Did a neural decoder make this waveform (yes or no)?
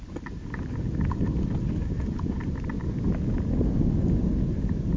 no